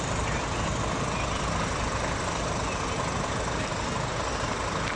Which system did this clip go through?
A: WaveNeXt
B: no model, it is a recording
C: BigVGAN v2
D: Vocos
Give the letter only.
B